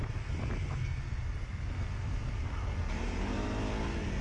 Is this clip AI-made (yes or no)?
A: no